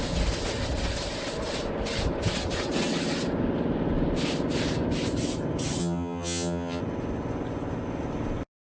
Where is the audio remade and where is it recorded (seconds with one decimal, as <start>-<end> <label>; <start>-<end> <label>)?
0.0-5.8 recorded; 5.8-6.8 remade; 6.8-8.6 recorded

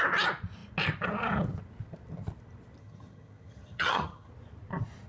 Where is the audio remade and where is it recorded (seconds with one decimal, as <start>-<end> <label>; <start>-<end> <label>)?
0.0-2.8 recorded; 2.8-4.3 remade; 4.3-5.1 recorded

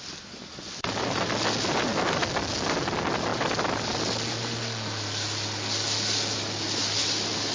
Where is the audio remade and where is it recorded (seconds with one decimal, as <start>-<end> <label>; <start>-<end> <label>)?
0.0-7.5 recorded

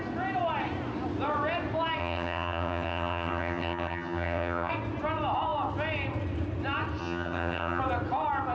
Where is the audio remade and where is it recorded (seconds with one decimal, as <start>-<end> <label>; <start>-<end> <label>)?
0.0-2.0 recorded; 2.0-4.7 remade; 4.7-7.0 recorded; 7.0-7.8 remade; 7.8-8.5 recorded